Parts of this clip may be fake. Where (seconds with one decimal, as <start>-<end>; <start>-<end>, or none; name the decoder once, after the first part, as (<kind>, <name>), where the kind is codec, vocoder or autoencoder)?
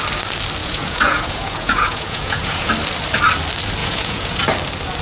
0.6-2.7 (vocoder, Vocos); 3.8-4.4